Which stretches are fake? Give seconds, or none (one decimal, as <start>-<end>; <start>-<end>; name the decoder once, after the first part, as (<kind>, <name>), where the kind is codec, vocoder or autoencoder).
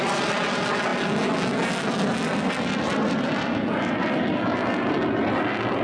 none